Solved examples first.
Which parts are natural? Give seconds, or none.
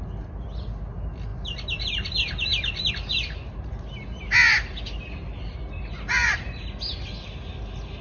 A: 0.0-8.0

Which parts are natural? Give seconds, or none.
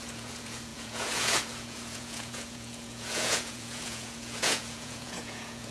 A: none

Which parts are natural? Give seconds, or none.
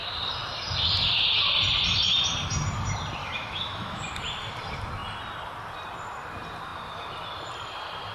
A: 0.0-3.2; 4.0-8.1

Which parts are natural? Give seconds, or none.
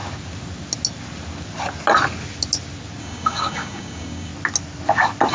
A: 0.0-3.0; 4.3-5.3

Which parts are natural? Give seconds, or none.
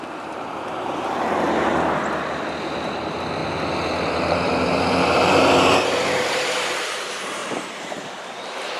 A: 1.7-2.6; 3.4-4.1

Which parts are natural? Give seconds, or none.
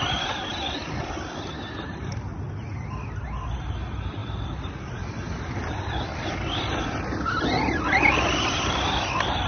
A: 0.0-9.5